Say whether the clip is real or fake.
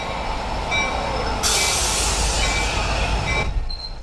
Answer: real